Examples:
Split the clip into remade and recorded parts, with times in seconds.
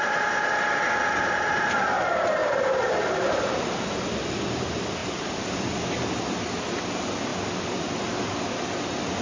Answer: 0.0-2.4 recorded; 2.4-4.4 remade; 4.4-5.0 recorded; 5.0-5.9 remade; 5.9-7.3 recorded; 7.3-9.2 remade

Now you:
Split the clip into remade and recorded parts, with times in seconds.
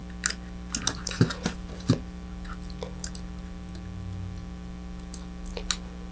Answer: 0.0-6.1 recorded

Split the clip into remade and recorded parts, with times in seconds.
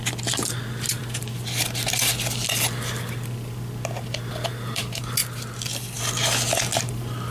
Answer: 0.0-7.3 recorded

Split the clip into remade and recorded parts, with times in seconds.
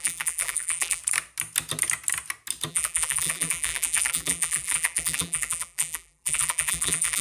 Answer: 0.0-1.0 remade; 1.0-2.7 recorded; 2.7-7.2 remade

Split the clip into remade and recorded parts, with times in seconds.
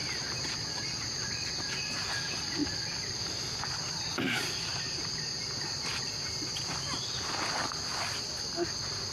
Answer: 0.0-1.5 remade; 1.5-2.6 recorded; 2.6-4.1 remade; 4.1-9.1 recorded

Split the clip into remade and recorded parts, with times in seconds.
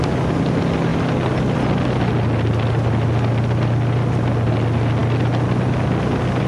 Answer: 0.0-6.5 recorded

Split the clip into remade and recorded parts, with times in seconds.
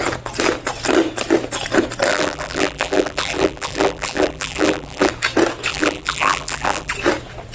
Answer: 0.0-2.1 recorded; 2.1-5.1 remade; 5.1-5.7 recorded; 5.7-6.9 remade; 6.9-7.5 recorded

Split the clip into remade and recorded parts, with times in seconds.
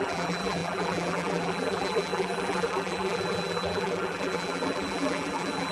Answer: 0.0-5.7 remade